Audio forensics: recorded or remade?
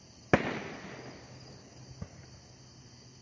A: recorded